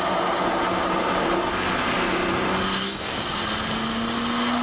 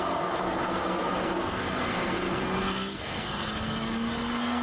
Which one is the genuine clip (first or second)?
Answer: first